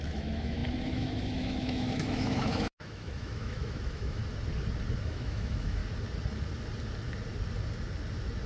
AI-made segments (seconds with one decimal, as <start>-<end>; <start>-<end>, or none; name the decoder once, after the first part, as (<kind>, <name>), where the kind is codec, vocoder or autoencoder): 0.0-4.2 (autoencoder, DAC-VAE); 5.0-5.8